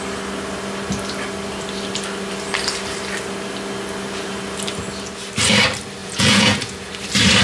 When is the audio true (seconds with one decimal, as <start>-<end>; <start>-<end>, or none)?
0.0-6.0; 6.9-7.4